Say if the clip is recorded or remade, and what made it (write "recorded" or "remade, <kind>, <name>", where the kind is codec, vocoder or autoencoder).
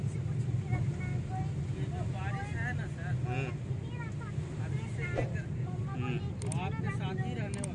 recorded